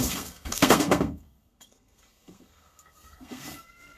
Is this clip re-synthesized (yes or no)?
yes